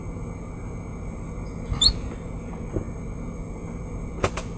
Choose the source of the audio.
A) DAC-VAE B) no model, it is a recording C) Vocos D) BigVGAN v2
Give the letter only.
B